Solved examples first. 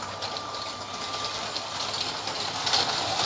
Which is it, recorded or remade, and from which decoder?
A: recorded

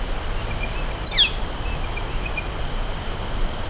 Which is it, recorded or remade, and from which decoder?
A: recorded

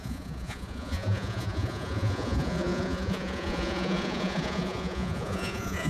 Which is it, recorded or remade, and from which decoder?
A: remade, vocoder, Vocos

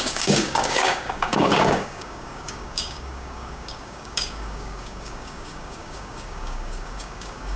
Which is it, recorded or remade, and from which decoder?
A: remade, codec, DAC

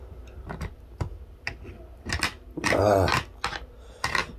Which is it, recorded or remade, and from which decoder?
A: recorded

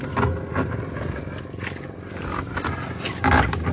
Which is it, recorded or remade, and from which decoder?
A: recorded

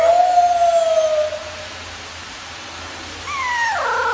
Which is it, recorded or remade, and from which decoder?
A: recorded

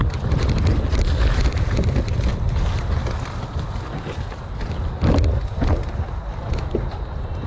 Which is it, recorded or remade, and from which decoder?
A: recorded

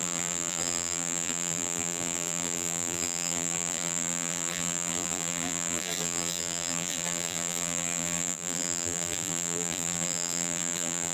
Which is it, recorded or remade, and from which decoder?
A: remade, vocoder, BigVGAN v2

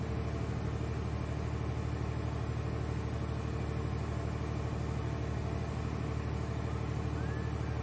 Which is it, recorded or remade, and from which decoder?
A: recorded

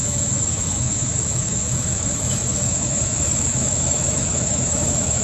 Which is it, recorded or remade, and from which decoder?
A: remade, autoencoder, DAC-VAE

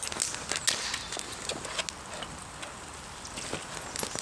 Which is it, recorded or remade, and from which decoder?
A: recorded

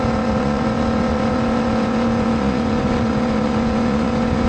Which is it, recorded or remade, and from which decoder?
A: remade, vocoder, Vocos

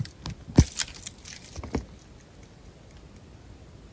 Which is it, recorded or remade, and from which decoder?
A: recorded